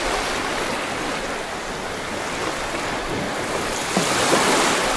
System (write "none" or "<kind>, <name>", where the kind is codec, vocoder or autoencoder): none